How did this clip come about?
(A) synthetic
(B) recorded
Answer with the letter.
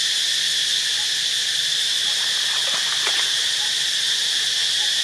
B